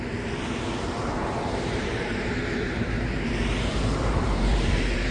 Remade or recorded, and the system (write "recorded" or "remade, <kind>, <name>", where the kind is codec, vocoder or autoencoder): remade, vocoder, BigVGAN v2